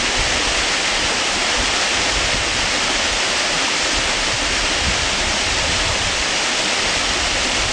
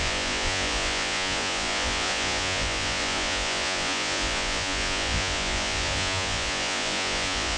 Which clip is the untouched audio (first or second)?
first